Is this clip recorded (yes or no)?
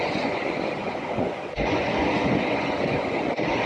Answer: no